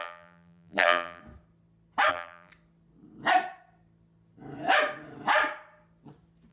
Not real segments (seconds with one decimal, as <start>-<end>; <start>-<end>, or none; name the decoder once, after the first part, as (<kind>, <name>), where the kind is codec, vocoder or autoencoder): 0.0-1.2 (vocoder, BigVGAN v2); 2.1-2.5